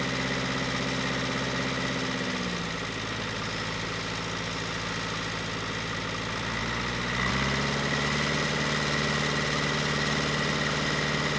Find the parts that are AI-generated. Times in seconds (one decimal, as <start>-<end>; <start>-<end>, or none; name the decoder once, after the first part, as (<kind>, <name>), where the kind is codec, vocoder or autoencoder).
none